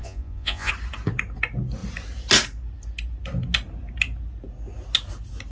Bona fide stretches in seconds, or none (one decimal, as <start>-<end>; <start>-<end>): 0.7-5.5